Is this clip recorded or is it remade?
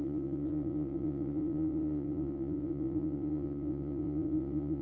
remade